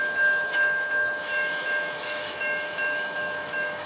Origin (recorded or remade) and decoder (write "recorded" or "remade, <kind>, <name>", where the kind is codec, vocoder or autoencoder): remade, autoencoder, DAC-VAE